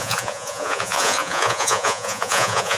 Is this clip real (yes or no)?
no